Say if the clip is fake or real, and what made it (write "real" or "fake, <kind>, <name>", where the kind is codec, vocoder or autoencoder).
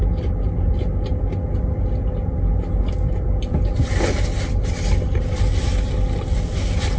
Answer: real